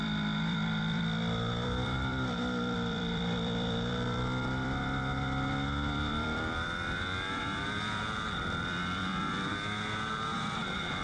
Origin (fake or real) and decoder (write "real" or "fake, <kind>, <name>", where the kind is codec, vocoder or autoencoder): fake, vocoder, BigVGAN v2